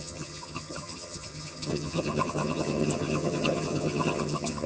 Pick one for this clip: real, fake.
fake